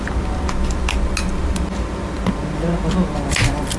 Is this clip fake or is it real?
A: real